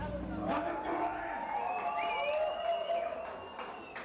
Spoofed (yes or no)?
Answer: no